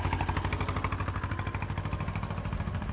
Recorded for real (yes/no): yes